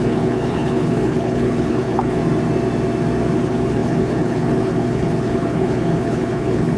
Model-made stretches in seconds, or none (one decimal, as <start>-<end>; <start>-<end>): 0.0-2.2; 3.4-6.8